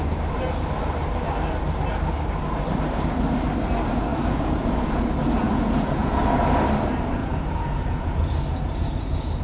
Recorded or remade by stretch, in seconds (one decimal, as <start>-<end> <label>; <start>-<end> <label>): 0.0-4.1 recorded; 4.1-6.2 remade; 6.2-7.2 recorded; 7.2-9.4 remade